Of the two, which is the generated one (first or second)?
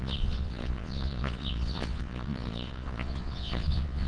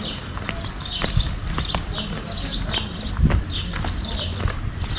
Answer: first